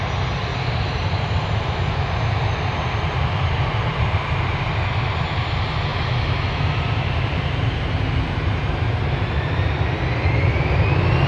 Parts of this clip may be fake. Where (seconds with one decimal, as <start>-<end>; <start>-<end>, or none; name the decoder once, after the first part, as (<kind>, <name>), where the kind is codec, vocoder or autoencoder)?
0.5-4.7 (vocoder, BigVGAN v2); 5.9-8.7